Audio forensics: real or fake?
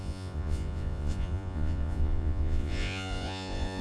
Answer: fake